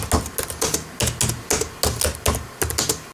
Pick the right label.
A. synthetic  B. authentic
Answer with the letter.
B